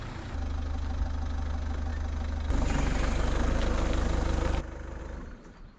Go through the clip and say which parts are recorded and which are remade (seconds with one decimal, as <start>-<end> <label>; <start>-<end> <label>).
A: 0.0-5.8 recorded